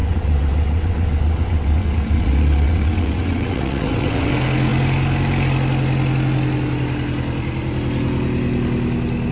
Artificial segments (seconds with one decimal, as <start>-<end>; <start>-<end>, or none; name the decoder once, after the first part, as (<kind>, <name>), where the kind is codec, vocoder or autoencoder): 0.0-4.3 (vocoder, WaveNeXt)